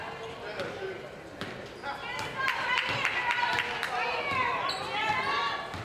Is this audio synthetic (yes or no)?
no